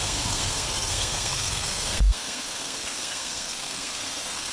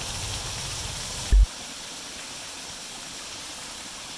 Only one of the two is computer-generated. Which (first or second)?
first